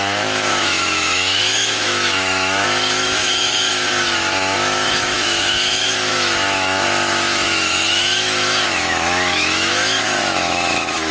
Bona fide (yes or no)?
no